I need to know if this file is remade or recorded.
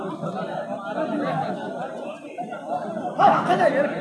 recorded